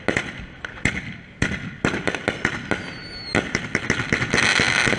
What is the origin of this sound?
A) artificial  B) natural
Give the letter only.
B